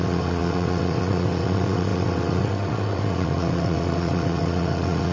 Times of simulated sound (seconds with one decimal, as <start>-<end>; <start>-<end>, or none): 0.0-5.1

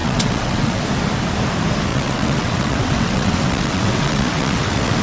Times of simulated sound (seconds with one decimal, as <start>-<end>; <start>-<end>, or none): 0.0-0.8; 1.9-5.0

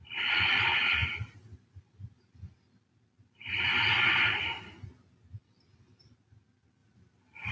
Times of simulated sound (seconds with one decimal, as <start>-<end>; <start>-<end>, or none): none

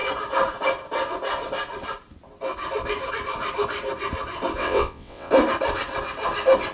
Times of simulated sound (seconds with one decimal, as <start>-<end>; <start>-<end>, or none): 4.6-5.3

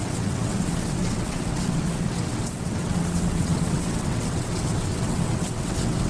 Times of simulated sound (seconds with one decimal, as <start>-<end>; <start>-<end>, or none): 0.0-6.1